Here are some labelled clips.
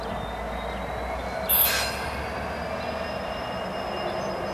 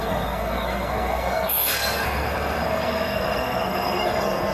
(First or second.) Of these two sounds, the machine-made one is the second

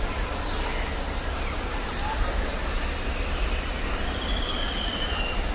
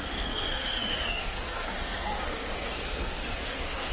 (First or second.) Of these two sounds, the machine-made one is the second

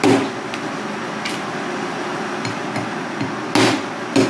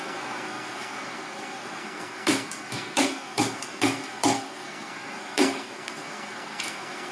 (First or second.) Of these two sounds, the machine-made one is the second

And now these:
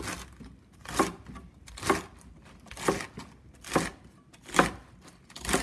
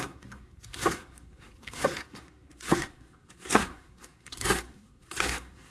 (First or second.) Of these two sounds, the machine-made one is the second